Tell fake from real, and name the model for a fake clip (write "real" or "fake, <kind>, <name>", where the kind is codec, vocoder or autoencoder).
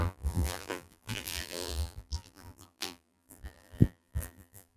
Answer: fake, vocoder, BigVGAN v2